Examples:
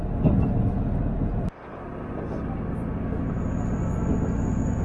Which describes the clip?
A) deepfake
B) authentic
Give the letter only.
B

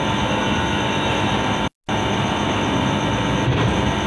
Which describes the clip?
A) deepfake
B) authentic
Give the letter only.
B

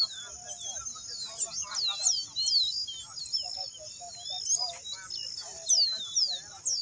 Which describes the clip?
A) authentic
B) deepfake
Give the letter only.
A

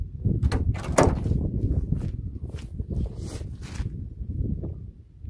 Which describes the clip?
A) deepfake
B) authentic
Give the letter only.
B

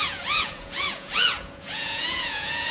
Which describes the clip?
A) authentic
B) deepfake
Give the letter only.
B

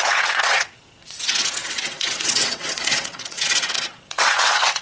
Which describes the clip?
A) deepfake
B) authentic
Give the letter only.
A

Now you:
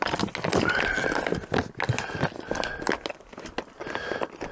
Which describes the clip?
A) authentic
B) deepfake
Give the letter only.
A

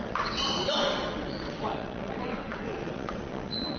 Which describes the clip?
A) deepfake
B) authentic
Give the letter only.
A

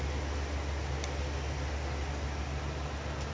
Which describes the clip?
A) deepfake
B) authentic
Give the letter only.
B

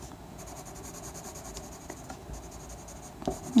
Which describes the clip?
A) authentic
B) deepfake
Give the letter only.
A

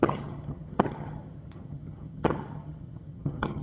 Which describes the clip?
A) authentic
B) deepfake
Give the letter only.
B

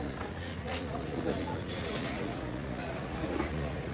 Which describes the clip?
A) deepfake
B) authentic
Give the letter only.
A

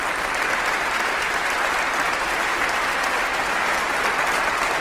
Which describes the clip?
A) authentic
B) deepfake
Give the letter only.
A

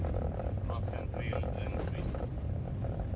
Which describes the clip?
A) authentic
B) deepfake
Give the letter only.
A